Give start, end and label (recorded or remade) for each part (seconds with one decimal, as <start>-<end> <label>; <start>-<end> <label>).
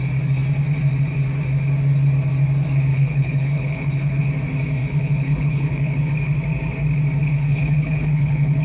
0.0-2.9 recorded; 2.9-4.2 remade; 4.2-4.8 recorded; 4.8-6.0 remade; 6.0-7.2 recorded; 7.2-8.6 remade